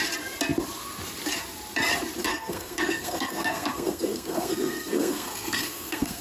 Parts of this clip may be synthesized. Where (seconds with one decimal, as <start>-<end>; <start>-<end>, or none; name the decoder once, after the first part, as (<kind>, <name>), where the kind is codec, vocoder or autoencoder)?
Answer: 2.3-6.2 (codec, SNAC)